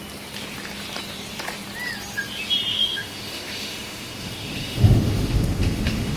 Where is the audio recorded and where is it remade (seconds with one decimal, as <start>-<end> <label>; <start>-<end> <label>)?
0.0-2.7 recorded; 2.7-6.2 remade